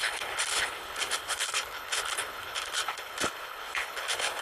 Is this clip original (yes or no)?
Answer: no